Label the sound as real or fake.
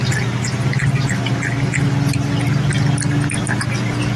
real